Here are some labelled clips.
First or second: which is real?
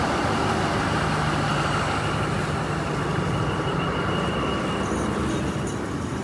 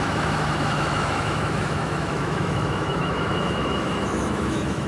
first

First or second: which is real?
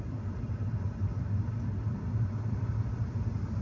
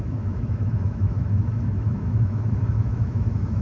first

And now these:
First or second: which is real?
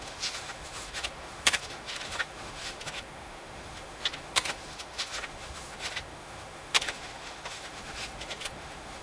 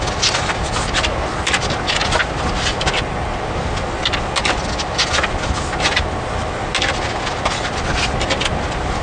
second